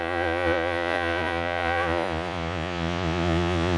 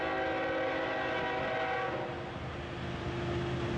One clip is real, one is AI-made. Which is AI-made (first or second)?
first